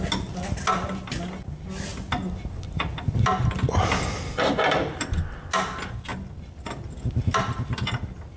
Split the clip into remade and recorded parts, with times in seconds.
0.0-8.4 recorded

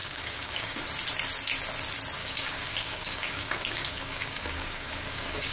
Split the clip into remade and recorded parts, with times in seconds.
0.0-0.8 remade; 0.8-2.2 recorded; 2.2-5.5 remade

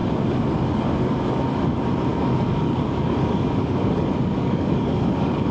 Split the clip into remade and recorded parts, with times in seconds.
0.0-1.4 remade; 1.4-2.1 recorded; 2.1-5.5 remade